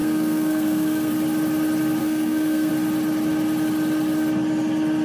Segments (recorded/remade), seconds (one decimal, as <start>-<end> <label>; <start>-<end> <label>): 0.0-1.1 remade; 1.1-2.0 recorded; 2.0-2.7 remade; 2.7-5.0 recorded